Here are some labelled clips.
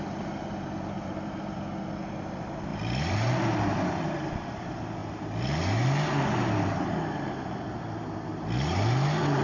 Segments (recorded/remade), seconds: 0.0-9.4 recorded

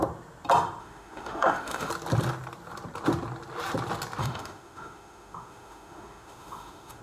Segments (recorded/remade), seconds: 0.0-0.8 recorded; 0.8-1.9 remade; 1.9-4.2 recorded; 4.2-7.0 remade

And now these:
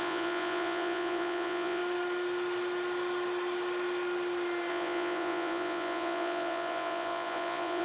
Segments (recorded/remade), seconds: 0.0-1.8 remade; 1.8-4.7 recorded; 4.7-7.8 remade

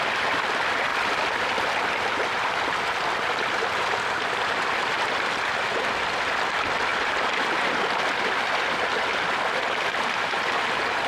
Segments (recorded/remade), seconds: 0.0-0.9 recorded; 0.9-5.3 remade; 5.3-6.9 recorded; 6.9-7.5 remade; 7.5-11.1 recorded